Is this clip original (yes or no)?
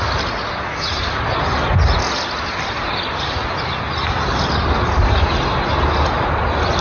yes